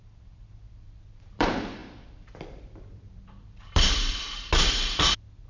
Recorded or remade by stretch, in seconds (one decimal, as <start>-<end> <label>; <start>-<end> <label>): 0.0-5.5 remade